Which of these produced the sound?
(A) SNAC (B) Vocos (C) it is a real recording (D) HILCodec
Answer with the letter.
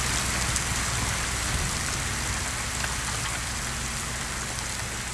C